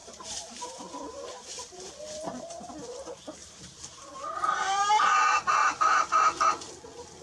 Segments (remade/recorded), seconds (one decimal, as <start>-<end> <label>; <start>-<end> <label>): 0.0-1.9 remade; 1.9-3.4 recorded; 3.4-5.0 remade; 5.0-7.2 recorded